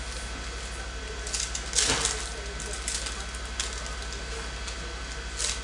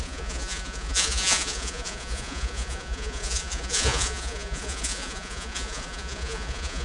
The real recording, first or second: first